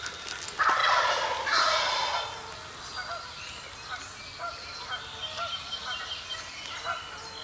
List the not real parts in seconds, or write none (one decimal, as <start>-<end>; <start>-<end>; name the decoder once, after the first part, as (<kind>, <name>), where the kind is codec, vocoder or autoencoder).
none